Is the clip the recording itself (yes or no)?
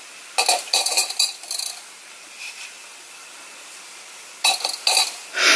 yes